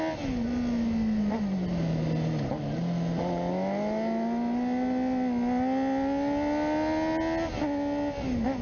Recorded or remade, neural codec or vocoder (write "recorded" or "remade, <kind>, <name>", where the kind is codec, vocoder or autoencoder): recorded